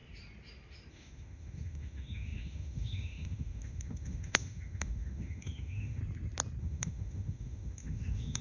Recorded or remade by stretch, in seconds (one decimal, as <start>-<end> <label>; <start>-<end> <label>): 0.0-0.9 recorded; 0.9-6.0 remade; 6.0-6.6 recorded; 6.6-8.4 remade